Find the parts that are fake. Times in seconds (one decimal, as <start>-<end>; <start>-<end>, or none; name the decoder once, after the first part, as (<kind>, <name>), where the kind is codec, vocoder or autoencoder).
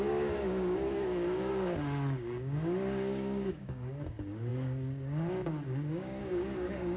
0.0-7.0 (codec, DAC)